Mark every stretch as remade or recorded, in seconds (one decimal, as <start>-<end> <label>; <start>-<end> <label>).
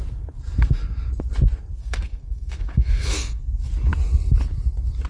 0.0-1.8 recorded; 1.8-3.4 remade; 3.4-5.1 recorded